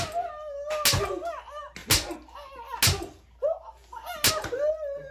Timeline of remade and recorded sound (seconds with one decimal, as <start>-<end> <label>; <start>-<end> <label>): 0.0-5.1 recorded